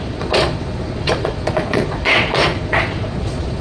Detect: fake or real fake